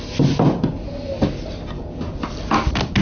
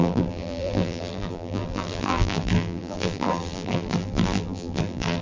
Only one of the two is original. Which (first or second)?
first